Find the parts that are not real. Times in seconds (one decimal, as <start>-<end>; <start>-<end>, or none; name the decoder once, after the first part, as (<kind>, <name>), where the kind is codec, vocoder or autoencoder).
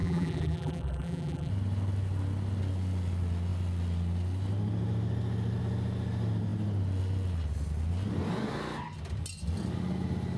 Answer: 0.0-1.5 (vocoder, BigVGAN v2)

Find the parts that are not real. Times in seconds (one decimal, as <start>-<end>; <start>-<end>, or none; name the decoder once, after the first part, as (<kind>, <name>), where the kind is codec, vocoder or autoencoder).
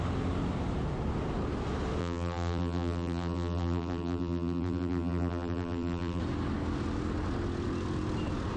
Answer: 2.0-6.2 (vocoder, BigVGAN v2)